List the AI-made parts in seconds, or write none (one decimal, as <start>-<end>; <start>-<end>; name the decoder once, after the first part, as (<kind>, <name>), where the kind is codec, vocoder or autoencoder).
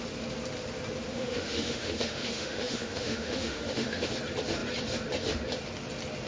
1.1-4.1 (autoencoder, DAC-VAE)